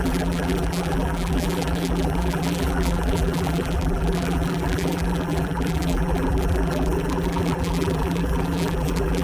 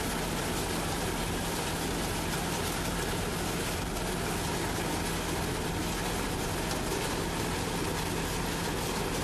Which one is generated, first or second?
first